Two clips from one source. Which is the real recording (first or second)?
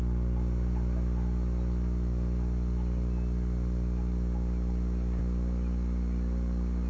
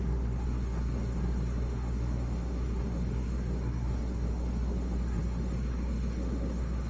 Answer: first